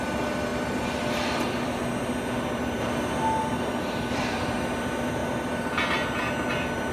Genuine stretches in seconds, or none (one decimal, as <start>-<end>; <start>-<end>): 0.0-6.9